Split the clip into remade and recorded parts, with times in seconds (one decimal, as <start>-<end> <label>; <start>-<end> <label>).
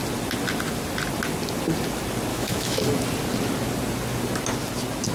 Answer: 0.0-2.3 recorded; 2.3-2.8 remade; 2.8-5.1 recorded